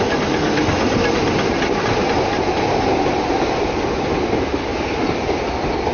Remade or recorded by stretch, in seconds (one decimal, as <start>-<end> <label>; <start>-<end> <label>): 0.0-5.9 recorded